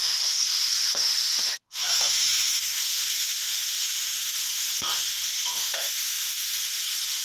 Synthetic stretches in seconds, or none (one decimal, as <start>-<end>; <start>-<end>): 0.0-7.2